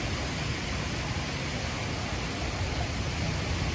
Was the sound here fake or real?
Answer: real